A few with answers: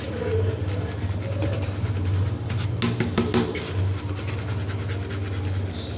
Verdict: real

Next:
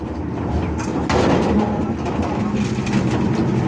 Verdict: real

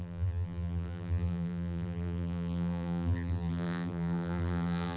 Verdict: fake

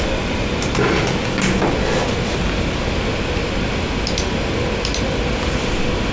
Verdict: real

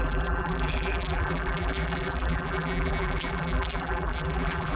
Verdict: fake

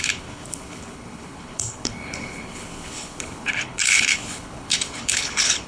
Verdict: fake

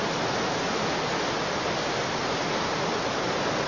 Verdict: real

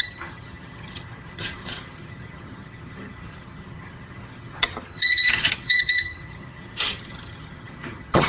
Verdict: fake